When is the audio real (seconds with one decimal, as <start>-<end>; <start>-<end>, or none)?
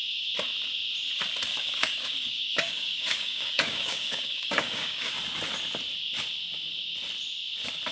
0.0-1.5; 5.1-7.9